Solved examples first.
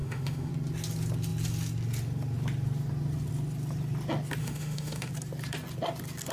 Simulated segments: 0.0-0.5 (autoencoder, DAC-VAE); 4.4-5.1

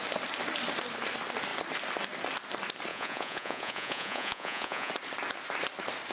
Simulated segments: 2.9-4.9 (vocoder, Vocos)

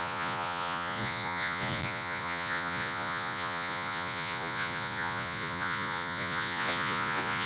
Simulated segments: 0.0-7.5 (vocoder, Vocos)

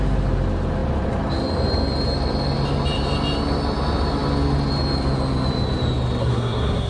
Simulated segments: 6.2-6.9 (codec, SNAC)

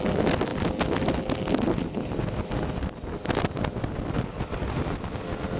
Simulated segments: none

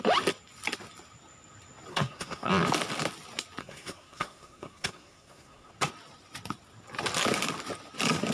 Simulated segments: 1.9-2.5 (codec, SNAC); 3.6-5.7